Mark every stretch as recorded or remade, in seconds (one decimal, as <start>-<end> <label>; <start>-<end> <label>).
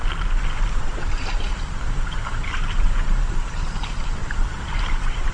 0.0-0.7 recorded; 0.7-5.3 remade